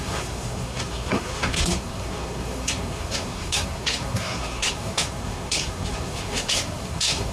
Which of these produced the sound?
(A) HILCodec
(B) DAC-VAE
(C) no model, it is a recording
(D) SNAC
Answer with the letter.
D